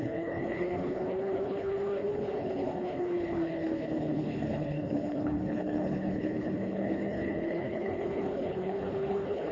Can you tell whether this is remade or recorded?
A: remade